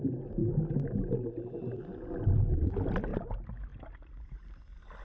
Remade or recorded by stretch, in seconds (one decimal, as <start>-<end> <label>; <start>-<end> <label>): 0.0-5.0 recorded

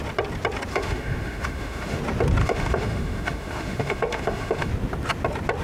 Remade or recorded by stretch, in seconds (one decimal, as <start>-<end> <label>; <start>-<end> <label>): 0.0-0.7 recorded; 0.7-2.0 remade; 2.0-2.4 recorded; 2.4-4.7 remade; 4.7-5.6 recorded

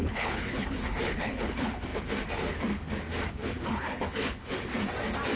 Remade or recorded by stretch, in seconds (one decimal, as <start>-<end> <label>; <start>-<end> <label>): 0.0-1.9 remade; 1.9-3.3 recorded; 3.3-4.7 remade; 4.7-5.4 recorded

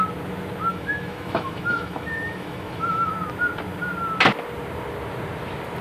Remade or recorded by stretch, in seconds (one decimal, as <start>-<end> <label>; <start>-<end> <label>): 0.0-0.7 recorded; 0.7-3.1 remade; 3.1-5.8 recorded

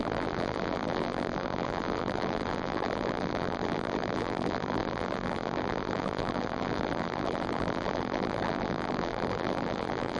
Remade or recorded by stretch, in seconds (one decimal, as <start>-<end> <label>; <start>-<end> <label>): 0.0-10.2 remade

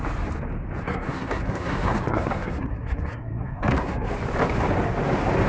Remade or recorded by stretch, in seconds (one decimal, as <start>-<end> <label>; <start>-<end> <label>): 0.0-0.8 recorded; 0.8-4.1 remade; 4.1-5.5 recorded

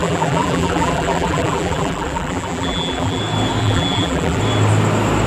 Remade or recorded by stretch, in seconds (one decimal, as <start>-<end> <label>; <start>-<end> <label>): 0.0-3.2 remade; 3.2-3.6 recorded; 3.6-4.4 remade; 4.4-5.3 recorded

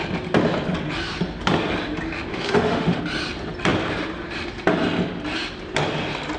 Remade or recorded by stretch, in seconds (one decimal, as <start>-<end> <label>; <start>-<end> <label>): 0.0-2.3 recorded; 2.3-3.0 remade; 3.0-6.4 recorded